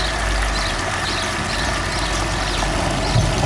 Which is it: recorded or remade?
recorded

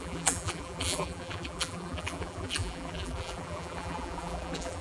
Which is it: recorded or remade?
remade